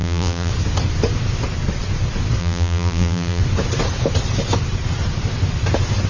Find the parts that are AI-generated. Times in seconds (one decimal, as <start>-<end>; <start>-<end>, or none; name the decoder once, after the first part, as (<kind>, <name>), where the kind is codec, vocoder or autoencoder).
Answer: 0.0-0.5 (vocoder, BigVGAN v2); 2.4-3.4